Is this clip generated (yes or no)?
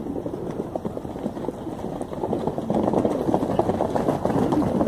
no